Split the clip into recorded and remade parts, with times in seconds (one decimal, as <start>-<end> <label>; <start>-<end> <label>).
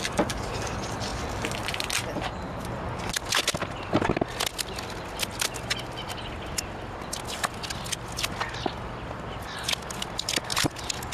0.0-11.1 recorded